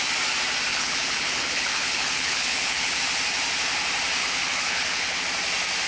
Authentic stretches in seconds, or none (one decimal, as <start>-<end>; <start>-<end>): 0.0-0.7; 3.0-4.2; 5.2-5.9

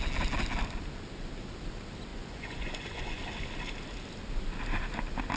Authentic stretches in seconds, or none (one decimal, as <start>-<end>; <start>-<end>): 0.0-2.1; 3.2-5.4

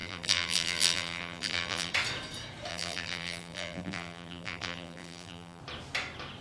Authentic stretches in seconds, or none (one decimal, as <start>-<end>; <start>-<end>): 1.9-2.7; 5.6-6.4